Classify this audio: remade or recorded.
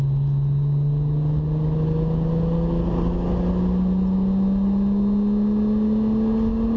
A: recorded